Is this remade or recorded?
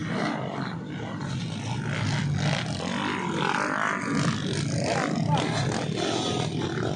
recorded